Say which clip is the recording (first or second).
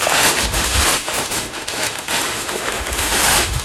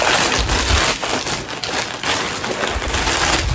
second